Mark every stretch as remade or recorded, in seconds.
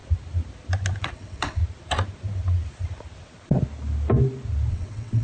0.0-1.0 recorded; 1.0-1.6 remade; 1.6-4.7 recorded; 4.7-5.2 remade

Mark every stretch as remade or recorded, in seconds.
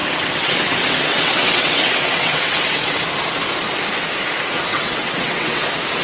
0.0-3.0 remade; 3.0-4.7 recorded; 4.7-5.6 remade; 5.6-6.0 recorded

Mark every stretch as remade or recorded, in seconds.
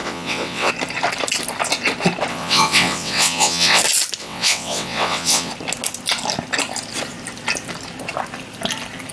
0.0-0.7 remade; 0.7-2.3 recorded; 2.3-3.8 remade; 3.8-4.2 recorded; 4.2-5.5 remade; 5.5-9.1 recorded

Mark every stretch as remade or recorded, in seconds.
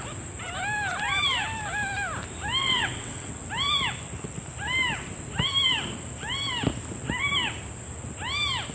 0.0-2.6 recorded; 2.6-3.3 remade; 3.3-8.7 recorded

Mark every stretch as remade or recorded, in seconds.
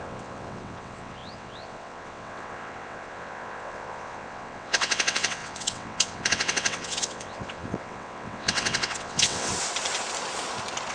0.0-9.5 remade; 9.5-10.9 recorded